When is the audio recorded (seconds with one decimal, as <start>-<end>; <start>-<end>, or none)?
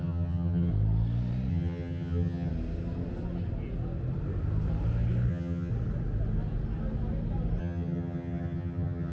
0.7-1.5; 2.5-5.3; 5.7-7.6